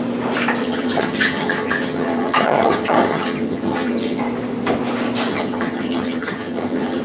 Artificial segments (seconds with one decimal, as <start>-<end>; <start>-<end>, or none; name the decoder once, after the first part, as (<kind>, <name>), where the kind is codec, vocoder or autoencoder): 0.6-4.2 (vocoder, HiFi-GAN); 5.3-7.0